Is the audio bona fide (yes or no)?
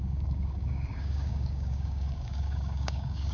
no